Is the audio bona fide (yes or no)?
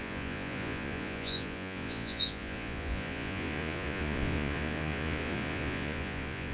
no